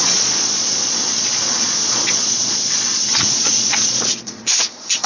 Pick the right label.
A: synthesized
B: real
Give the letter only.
A